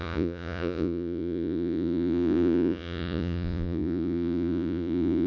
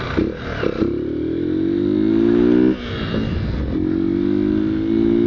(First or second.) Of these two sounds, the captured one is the second